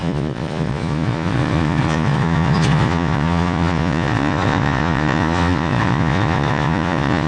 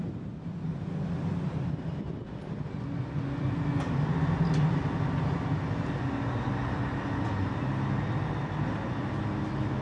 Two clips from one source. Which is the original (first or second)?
second